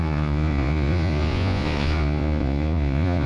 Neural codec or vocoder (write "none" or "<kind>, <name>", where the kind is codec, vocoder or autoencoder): vocoder, Vocos